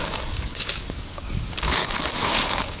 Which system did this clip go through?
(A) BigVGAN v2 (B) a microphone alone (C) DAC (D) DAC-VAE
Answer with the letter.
C